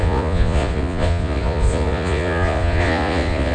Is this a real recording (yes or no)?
no